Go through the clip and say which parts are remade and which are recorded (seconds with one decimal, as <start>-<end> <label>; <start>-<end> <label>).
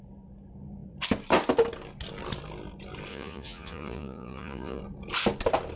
0.0-3.1 recorded; 3.1-4.8 remade; 4.8-5.8 recorded